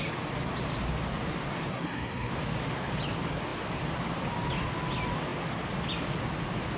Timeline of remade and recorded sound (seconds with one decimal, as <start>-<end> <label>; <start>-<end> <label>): 0.0-1.7 recorded; 1.7-2.3 remade; 2.3-6.8 recorded